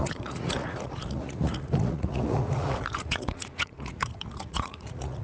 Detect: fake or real fake